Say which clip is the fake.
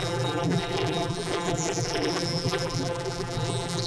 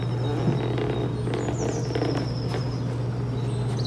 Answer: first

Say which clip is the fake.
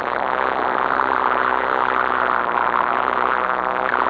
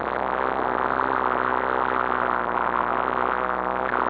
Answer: first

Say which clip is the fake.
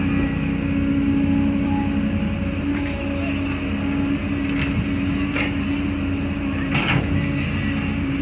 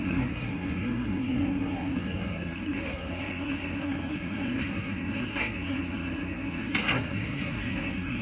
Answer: second